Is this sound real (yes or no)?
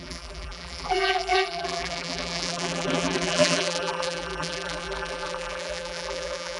no